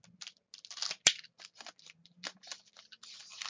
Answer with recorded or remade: recorded